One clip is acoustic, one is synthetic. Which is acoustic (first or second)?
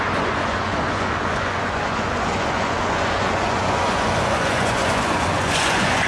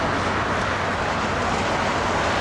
second